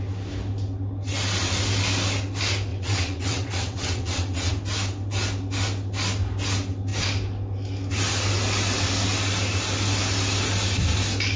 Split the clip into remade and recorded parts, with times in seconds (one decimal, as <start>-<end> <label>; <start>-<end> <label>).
0.0-2.7 recorded; 2.7-4.5 remade; 4.5-11.4 recorded